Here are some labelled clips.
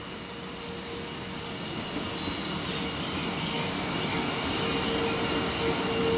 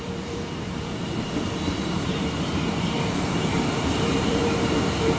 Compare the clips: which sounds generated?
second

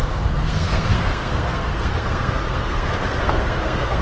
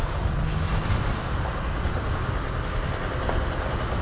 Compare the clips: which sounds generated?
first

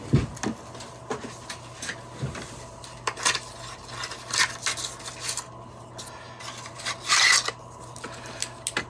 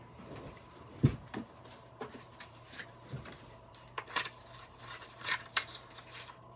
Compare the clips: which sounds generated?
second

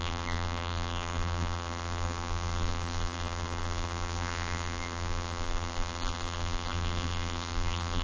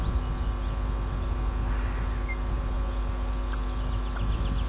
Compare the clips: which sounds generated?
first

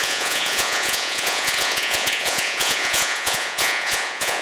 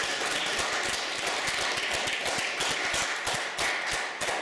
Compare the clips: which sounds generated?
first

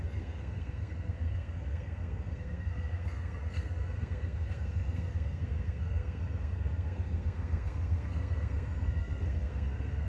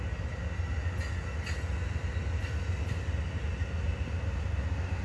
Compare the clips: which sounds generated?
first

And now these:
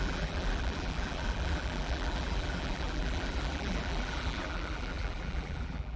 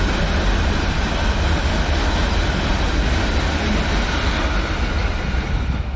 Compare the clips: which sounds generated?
first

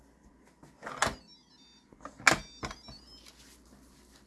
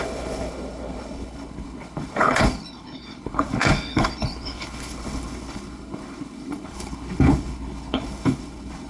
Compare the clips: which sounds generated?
second